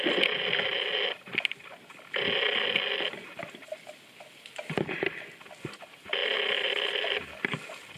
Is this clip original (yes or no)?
yes